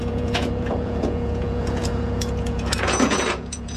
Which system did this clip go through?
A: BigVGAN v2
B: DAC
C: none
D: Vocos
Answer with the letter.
D